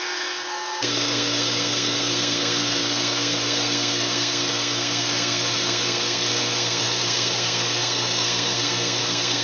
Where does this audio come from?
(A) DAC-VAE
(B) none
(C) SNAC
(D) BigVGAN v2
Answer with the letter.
C